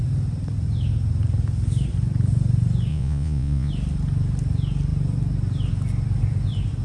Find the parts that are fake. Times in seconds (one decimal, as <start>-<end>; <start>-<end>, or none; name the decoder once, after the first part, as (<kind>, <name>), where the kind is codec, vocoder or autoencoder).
2.9-3.7 (vocoder, Vocos)